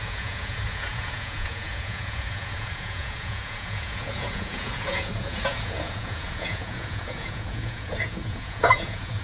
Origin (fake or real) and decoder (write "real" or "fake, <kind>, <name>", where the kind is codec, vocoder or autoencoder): fake, vocoder, Vocos